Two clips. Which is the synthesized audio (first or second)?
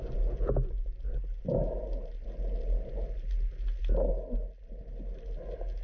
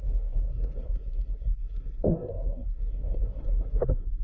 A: second